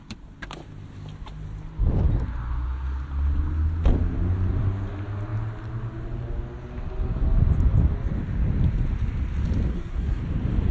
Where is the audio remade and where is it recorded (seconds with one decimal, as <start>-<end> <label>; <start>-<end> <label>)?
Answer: 0.0-9.7 recorded; 9.7-10.2 remade; 10.2-10.7 recorded